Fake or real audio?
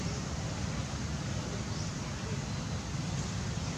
real